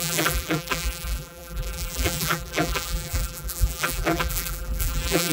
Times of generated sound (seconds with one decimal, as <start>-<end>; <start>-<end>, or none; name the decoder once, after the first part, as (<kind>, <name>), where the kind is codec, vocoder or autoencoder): 0.0-5.3 (vocoder, BigVGAN v2)